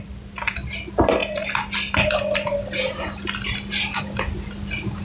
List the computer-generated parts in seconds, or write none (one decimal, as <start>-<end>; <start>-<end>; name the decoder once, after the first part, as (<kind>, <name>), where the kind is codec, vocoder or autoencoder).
none